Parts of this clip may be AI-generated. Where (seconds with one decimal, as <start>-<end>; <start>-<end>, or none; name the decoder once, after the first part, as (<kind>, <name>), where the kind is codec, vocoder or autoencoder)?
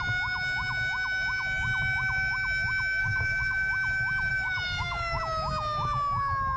3.0-3.7 (codec, DAC); 4.3-5.2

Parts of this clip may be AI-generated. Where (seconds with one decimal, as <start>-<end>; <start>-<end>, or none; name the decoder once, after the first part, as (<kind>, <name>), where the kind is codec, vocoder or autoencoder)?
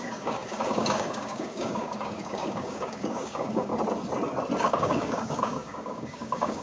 0.0-3.7 (codec, DAC); 4.6-6.6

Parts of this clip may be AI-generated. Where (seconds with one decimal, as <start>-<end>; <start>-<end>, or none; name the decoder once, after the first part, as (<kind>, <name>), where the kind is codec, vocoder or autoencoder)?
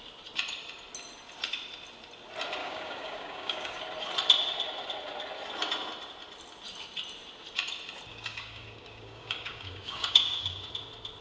2.6-3.8 (codec, DAC); 8.1-10.7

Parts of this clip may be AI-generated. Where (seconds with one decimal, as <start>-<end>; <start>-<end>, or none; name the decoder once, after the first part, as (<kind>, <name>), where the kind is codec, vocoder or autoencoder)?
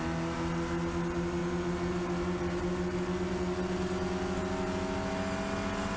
none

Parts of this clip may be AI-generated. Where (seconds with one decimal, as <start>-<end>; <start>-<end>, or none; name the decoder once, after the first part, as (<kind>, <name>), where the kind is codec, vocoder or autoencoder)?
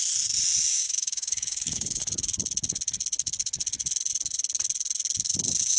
0.7-2.0 (codec, DAC)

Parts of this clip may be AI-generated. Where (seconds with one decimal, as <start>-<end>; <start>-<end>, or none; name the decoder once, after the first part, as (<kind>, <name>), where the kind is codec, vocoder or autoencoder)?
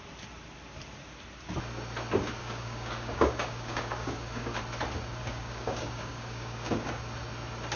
2.4-4.6 (codec, DAC); 5.2-7.0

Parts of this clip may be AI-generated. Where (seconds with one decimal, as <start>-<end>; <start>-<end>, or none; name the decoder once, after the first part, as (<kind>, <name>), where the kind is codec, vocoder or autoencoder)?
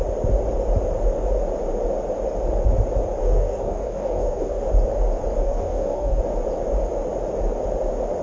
3.2-4.7 (codec, DAC); 5.4-6.2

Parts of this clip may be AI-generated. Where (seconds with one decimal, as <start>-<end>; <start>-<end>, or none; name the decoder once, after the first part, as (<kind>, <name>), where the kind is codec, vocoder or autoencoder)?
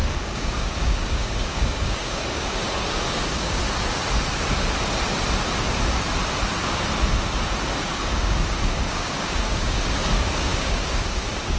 0.0-3.6 (codec, DAC); 7.8-11.6